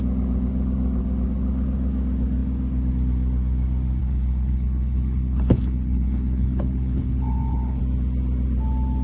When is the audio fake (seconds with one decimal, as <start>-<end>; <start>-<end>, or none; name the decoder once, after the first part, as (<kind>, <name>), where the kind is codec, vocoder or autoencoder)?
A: 4.0-7.8 (codec, HILCodec)